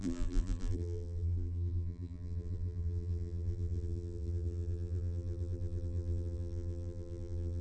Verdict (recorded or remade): remade